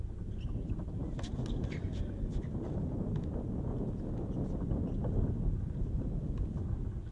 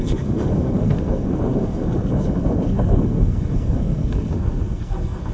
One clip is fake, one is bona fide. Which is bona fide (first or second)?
first